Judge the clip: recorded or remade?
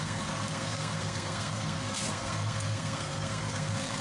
remade